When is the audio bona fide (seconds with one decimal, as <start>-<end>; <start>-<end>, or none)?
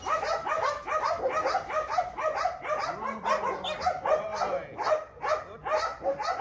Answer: 0.0-6.4